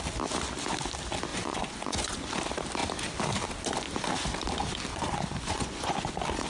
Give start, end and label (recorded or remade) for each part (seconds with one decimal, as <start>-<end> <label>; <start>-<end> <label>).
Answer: 0.0-1.3 recorded; 1.3-2.3 remade; 2.3-4.9 recorded; 4.9-6.1 remade; 6.1-6.5 recorded